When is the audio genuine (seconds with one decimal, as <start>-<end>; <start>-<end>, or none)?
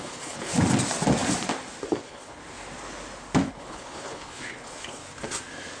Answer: 0.5-2.0; 2.4-3.5; 5.0-5.8